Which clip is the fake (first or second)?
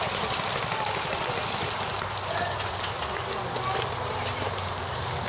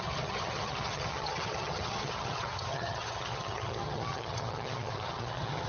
second